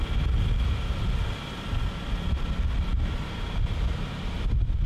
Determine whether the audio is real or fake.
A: real